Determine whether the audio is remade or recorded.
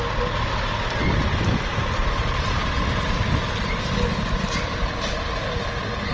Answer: recorded